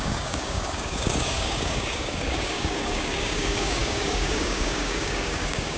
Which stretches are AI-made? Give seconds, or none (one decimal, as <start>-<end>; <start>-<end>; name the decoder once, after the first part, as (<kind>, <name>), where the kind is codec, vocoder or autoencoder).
0.0-5.8 (codec, DAC)